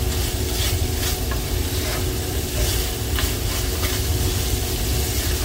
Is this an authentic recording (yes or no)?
yes